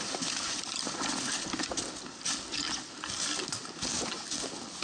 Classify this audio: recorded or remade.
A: recorded